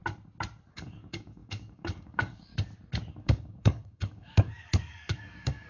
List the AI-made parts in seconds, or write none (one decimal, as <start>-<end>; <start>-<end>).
0.7-2.5; 3.1-5.7